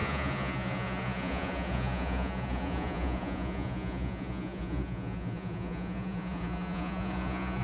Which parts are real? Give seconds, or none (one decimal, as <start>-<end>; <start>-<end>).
none